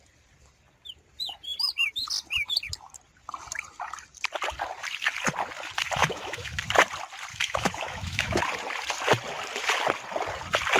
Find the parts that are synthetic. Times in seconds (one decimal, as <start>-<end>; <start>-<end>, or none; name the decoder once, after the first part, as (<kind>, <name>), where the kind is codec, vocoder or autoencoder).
6.0-6.6 (autoencoder, DAC-VAE); 7.3-8.4